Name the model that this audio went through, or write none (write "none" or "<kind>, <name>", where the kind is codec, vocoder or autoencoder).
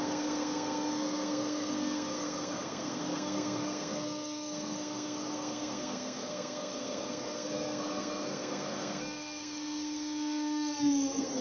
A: codec, SNAC